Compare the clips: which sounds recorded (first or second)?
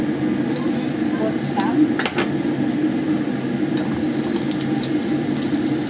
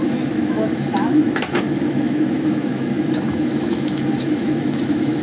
first